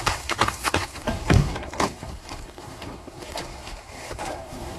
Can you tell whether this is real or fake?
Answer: fake